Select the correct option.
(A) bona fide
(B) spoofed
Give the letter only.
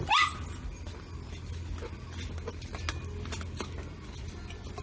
A